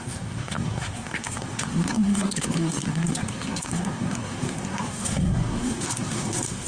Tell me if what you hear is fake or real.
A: fake